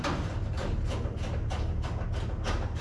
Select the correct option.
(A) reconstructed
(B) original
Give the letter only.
B